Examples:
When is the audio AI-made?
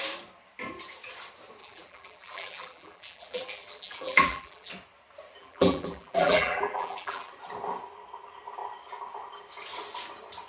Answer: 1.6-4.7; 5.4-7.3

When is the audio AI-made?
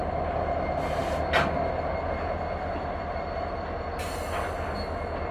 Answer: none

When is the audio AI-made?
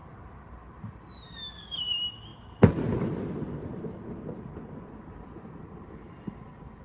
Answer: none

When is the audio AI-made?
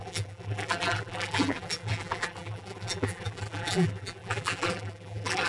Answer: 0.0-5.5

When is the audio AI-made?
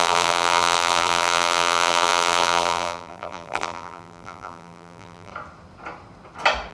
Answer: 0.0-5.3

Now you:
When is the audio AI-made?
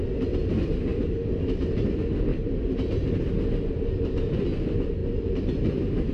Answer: 0.9-1.4; 2.3-3.3; 5.0-6.1